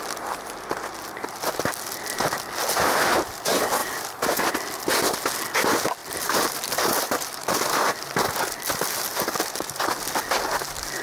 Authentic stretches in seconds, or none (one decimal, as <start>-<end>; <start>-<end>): 0.0-3.8; 4.5-6.0; 8.7-9.1; 9.9-11.0